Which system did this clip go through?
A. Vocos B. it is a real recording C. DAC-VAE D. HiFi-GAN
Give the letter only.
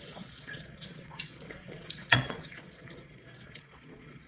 A